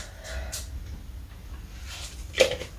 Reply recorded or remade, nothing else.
recorded